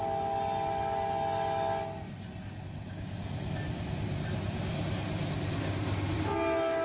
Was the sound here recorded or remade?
recorded